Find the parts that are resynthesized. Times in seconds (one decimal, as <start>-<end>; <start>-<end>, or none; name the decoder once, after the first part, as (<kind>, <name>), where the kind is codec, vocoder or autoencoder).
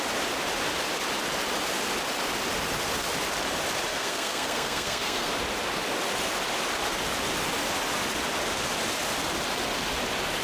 3.9-5.3 (codec, SNAC)